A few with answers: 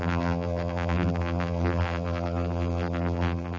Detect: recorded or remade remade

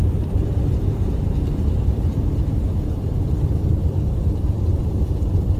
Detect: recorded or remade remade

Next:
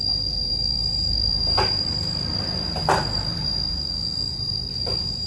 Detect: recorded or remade remade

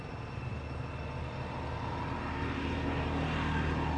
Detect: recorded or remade recorded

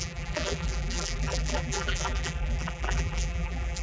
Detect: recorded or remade remade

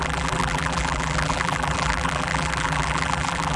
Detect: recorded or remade remade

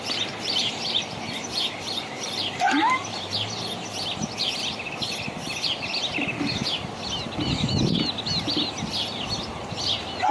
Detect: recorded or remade recorded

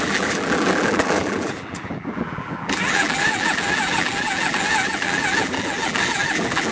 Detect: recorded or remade remade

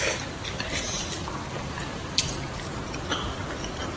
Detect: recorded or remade remade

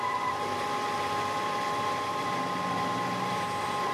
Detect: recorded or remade remade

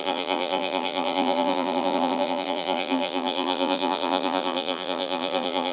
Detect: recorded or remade remade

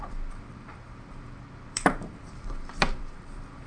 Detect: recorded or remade remade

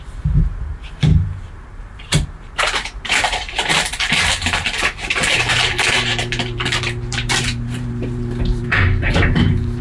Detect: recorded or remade remade